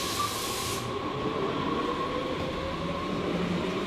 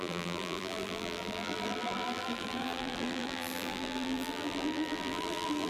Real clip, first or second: first